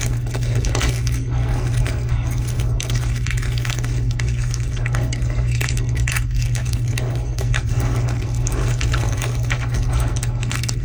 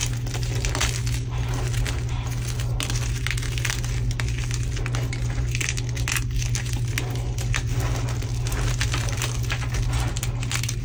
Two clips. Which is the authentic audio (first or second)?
second